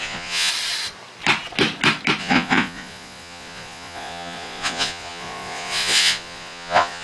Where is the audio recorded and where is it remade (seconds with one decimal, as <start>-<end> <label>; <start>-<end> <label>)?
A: 0.0-0.5 remade; 0.5-2.2 recorded; 2.2-7.0 remade